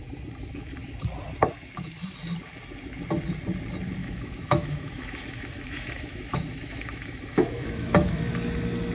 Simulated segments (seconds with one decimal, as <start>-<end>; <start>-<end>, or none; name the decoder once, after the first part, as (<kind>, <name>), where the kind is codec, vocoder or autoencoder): 4.0-8.2 (autoencoder, DAC-VAE)